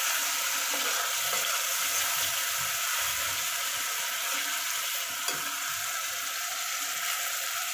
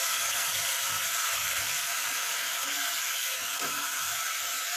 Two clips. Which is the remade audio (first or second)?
second